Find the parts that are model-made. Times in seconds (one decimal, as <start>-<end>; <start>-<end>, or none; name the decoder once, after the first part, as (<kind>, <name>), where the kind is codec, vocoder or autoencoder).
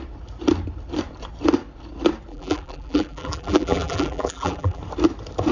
2.3-4.8 (vocoder, BigVGAN v2)